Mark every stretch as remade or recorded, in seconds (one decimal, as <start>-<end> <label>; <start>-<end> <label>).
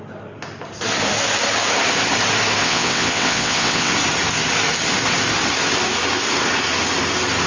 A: 0.0-2.6 recorded; 2.6-3.9 remade; 3.9-7.5 recorded